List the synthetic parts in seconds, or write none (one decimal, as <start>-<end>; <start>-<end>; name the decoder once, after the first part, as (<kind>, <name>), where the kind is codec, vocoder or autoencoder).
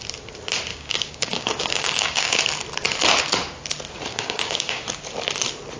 0.7-2.4 (codec, DAC); 4.1-4.8